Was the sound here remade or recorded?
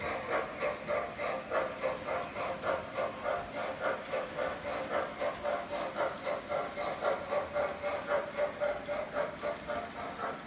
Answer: recorded